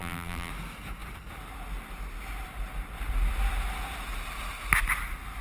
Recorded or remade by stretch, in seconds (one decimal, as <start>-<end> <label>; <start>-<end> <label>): 0.0-0.5 remade; 0.5-5.4 recorded